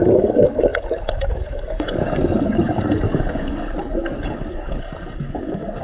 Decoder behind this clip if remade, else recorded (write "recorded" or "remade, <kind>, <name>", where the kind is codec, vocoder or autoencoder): remade, codec, DAC